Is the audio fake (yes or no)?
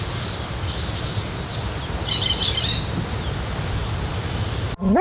no